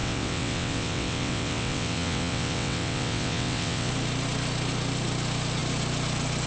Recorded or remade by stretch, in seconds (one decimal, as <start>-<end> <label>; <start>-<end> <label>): 0.0-3.9 remade; 3.9-6.5 recorded